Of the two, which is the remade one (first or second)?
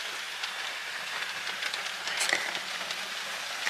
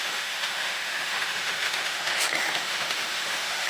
second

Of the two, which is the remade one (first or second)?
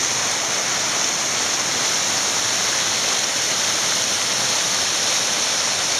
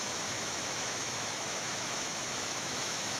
second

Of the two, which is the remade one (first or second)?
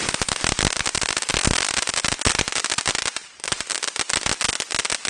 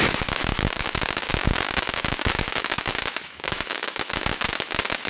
second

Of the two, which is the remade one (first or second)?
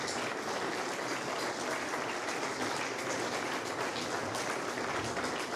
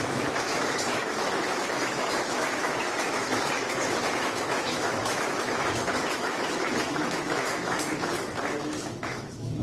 second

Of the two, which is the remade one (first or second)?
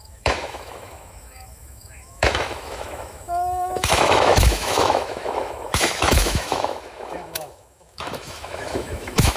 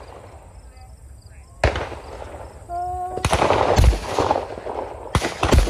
first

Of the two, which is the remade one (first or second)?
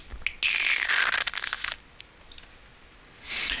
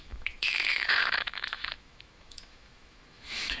second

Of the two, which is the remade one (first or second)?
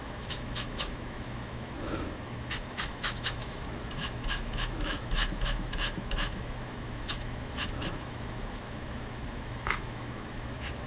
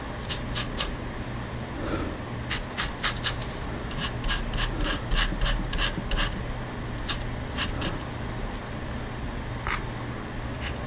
first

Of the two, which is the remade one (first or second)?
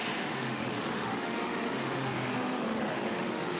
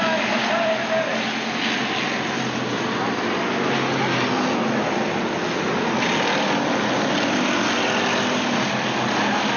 first